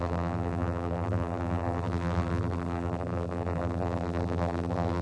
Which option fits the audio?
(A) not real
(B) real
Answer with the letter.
A